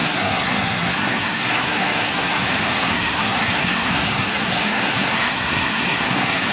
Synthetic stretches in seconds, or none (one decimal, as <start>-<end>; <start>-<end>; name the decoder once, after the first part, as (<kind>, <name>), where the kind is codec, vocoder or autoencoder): 0.0-2.4 (codec, SNAC); 2.8-6.5